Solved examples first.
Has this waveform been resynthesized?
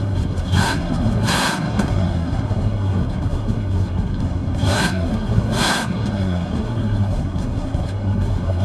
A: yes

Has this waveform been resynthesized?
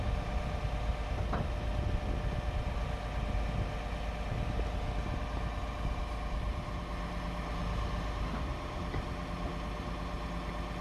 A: no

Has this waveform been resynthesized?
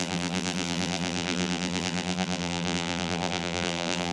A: yes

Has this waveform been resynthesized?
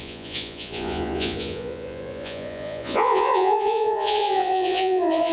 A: yes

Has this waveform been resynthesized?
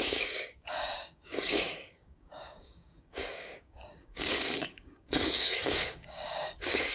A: yes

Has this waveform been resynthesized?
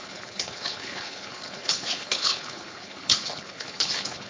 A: yes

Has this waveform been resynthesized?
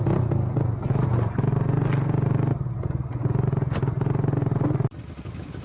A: no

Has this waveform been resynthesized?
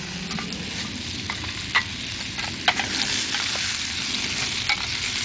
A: no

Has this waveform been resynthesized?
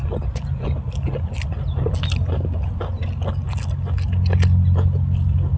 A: no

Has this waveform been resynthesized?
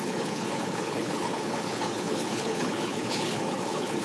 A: yes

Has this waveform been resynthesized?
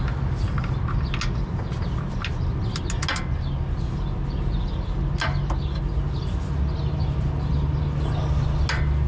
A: no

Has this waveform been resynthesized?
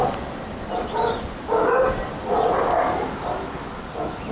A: no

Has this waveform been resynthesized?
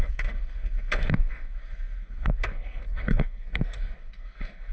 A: yes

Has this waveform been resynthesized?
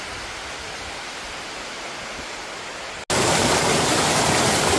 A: no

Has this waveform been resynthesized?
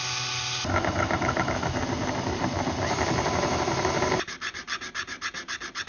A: no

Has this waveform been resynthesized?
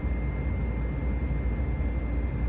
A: no